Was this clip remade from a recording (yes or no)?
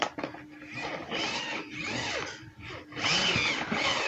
no